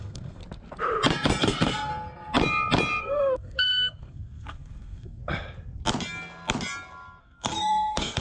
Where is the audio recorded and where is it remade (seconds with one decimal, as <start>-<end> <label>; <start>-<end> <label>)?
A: 0.0-0.4 remade; 0.4-1.4 recorded; 1.4-1.9 remade; 1.9-3.0 recorded; 3.0-5.2 remade; 5.2-7.2 recorded; 7.2-8.2 remade